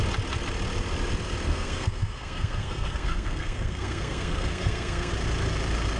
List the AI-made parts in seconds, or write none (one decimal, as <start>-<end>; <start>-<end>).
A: 1.5-5.1